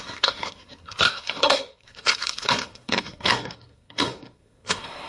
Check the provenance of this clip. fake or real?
fake